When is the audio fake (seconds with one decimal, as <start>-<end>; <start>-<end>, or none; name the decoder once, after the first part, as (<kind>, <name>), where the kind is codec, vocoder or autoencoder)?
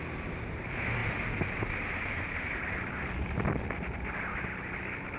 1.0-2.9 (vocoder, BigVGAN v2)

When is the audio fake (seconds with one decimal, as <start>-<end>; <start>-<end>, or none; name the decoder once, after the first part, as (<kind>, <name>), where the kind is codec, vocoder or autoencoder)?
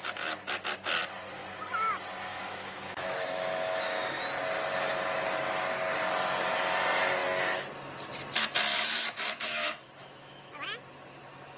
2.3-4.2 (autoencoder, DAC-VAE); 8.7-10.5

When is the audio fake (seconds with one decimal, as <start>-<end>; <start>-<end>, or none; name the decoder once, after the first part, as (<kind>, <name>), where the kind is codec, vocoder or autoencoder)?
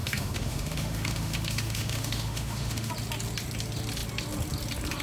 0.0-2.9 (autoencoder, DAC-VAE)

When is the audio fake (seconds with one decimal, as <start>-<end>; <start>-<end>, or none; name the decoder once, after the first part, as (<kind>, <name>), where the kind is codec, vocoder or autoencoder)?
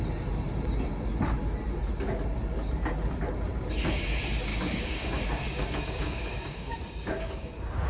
4.5-7.5 (codec, DAC)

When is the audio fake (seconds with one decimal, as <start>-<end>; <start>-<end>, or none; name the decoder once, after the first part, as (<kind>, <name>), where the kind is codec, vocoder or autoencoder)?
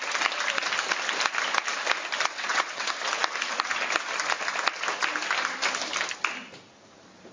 2.3-2.9 (vocoder, WaveNeXt)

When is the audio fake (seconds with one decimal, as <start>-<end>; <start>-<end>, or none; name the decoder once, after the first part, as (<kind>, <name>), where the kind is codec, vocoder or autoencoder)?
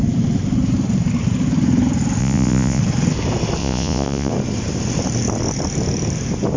2.2-2.8 (vocoder, Vocos); 3.6-4.3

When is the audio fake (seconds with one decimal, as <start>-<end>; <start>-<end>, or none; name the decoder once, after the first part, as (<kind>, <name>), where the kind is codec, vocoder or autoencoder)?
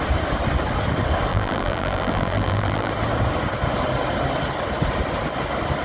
1.3-2.9 (vocoder, BigVGAN v2)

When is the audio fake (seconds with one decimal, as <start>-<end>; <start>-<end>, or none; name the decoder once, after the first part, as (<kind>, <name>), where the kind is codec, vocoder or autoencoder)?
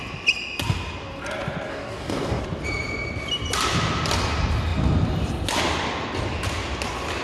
1.7-2.4 (codec, DAC)